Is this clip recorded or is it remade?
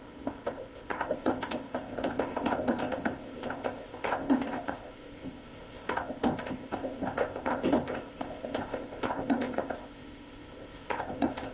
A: remade